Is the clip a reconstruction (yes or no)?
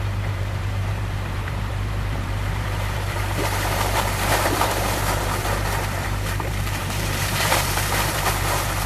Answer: yes